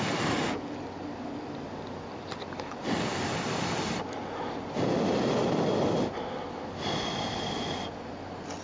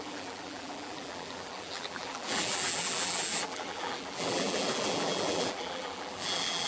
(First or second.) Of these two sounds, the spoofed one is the second